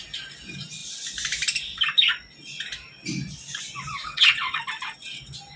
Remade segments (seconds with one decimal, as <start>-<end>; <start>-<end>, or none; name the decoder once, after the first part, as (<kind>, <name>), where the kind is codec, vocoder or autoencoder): 4.0-4.6 (vocoder, WaveNeXt)